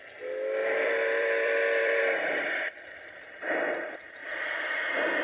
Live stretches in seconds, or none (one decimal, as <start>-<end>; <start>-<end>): 0.0-0.6; 3.7-4.2; 4.8-5.2